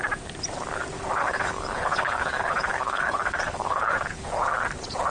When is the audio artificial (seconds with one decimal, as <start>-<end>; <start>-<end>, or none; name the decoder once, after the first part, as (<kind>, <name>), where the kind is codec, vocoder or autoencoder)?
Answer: 1.2-4.3 (codec, HILCodec)